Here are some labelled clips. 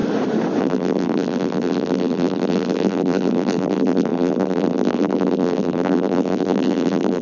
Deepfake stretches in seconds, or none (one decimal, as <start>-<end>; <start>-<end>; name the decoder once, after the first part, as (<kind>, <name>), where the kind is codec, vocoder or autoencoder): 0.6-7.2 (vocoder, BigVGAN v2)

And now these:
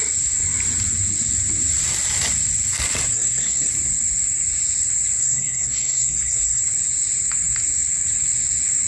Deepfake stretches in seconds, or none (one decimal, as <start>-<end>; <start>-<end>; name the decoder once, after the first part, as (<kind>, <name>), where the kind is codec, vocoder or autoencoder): 3.1-3.7 (codec, SNAC); 5.2-6.6

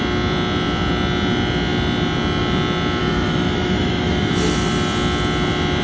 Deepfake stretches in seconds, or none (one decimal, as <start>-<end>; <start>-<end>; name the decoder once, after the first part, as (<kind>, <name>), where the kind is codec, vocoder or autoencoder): 3.0-4.3 (autoencoder, DAC-VAE)

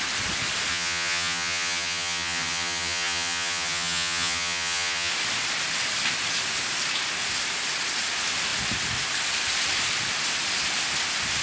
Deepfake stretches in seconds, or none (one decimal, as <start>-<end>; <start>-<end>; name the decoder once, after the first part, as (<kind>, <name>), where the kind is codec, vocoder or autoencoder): 0.7-5.1 (vocoder, HiFi-GAN)

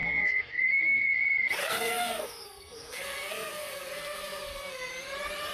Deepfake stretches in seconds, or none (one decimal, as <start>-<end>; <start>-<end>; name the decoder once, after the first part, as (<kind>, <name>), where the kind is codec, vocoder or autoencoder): 0.0-1.1 (codec, SNAC); 1.6-4.9

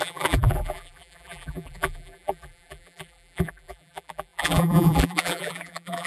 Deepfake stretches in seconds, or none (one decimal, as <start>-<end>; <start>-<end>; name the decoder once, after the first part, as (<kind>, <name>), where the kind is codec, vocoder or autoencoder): 0.0-6.1 (vocoder, BigVGAN v2)